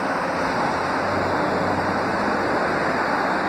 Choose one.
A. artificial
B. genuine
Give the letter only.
B